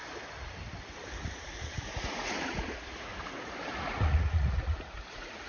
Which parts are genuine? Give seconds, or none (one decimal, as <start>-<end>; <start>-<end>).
0.0-1.2; 3.1-3.8